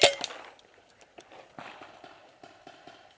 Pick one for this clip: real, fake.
real